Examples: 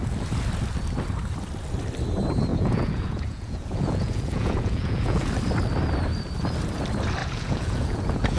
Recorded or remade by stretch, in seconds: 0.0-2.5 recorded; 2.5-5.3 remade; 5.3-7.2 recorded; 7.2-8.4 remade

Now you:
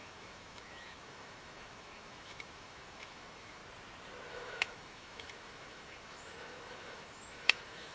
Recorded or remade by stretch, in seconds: 0.0-3.6 remade; 3.6-4.3 recorded; 4.3-7.9 remade